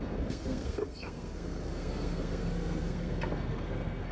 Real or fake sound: fake